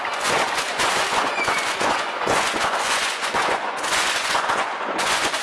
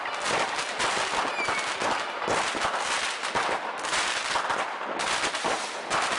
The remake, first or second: first